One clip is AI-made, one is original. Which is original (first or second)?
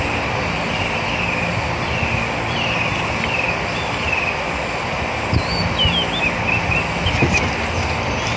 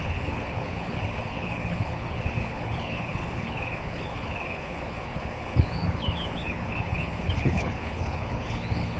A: first